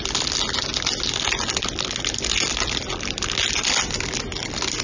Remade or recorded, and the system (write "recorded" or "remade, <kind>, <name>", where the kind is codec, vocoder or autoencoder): recorded